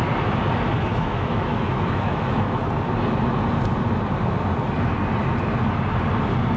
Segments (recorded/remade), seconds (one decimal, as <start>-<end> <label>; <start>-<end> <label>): 0.0-0.9 recorded; 0.9-2.6 remade; 2.6-6.6 recorded